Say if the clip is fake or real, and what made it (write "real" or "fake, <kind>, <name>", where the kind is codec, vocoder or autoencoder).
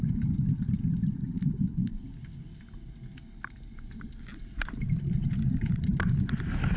real